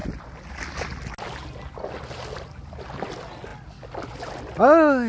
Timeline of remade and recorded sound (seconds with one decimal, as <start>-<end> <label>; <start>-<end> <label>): 0.0-5.1 recorded